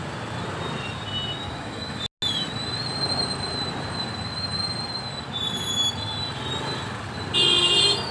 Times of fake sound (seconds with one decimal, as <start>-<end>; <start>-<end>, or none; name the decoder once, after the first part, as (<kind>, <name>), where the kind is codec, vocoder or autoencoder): 1.4-2.0 (autoencoder, DAC-VAE)